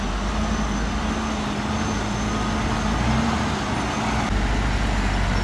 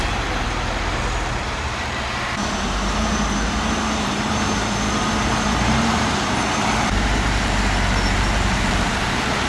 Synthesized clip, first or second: second